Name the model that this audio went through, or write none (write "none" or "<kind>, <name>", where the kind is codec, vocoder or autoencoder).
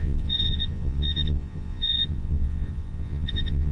vocoder, Vocos